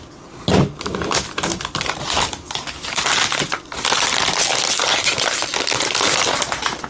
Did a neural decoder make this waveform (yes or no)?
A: no